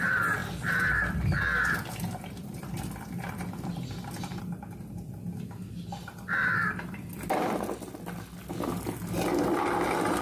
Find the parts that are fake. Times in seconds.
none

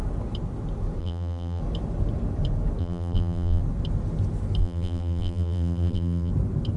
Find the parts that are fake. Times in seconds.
1.0-1.6 (vocoder, BigVGAN v2); 2.8-3.6; 4.6-6.3

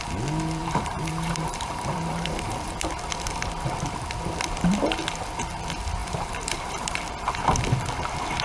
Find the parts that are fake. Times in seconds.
0.6-2.7 (vocoder, BigVGAN v2); 6.0-7.0